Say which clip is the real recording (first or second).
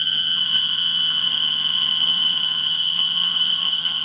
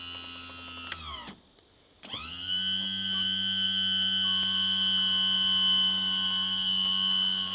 second